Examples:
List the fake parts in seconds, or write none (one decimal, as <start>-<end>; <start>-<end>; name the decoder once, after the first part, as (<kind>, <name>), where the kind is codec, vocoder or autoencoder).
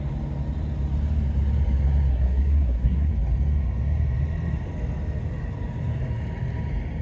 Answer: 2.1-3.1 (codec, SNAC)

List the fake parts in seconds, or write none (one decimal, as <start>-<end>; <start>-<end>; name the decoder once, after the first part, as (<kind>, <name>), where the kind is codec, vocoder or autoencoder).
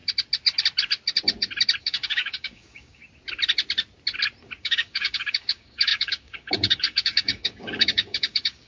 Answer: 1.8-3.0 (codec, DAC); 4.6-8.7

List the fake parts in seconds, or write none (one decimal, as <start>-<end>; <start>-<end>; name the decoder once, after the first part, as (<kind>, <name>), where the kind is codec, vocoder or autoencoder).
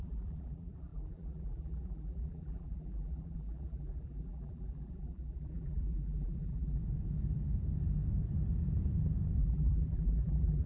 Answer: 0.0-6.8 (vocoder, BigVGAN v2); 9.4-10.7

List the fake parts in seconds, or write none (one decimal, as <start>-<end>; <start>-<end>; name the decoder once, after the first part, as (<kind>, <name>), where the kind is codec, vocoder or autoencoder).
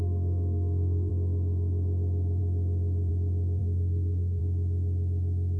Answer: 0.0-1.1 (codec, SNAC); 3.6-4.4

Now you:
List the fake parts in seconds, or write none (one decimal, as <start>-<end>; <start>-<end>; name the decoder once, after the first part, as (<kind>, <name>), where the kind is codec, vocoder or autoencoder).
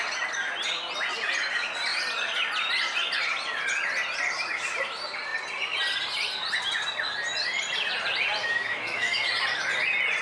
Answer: 8.4-9.2 (autoencoder, DAC-VAE)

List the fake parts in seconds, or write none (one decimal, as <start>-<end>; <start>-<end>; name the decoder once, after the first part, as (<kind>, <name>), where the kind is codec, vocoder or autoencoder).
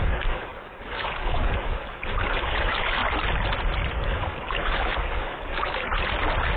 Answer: 0.0-3.0 (codec, DAC); 3.9-5.9